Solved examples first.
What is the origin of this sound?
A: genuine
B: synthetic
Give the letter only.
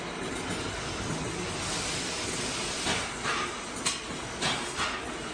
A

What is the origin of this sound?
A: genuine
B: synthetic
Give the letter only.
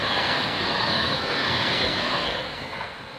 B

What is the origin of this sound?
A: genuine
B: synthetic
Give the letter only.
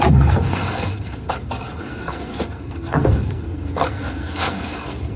B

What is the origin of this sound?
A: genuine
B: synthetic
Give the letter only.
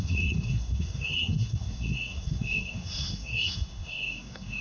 B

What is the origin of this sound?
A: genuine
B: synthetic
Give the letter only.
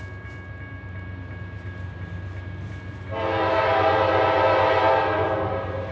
A